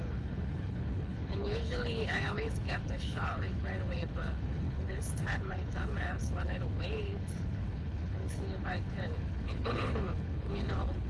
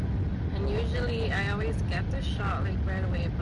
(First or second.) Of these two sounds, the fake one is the first